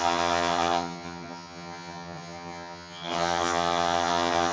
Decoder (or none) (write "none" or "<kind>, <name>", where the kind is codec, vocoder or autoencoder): vocoder, HiFi-GAN